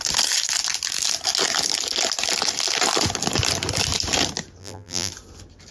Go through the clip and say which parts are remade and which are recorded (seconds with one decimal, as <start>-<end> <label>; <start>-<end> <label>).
0.0-4.6 recorded; 4.6-5.1 remade; 5.1-5.7 recorded